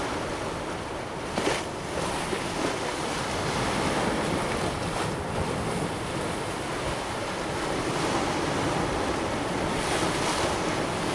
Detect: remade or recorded recorded